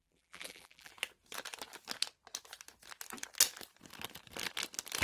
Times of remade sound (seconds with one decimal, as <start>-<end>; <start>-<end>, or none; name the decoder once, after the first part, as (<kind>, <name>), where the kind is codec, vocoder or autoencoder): 0.0-0.9 (vocoder, BigVGAN v2)